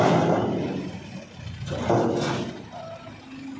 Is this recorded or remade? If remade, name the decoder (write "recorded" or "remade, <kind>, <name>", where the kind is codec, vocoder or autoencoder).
recorded